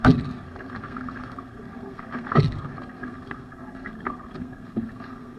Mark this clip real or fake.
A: fake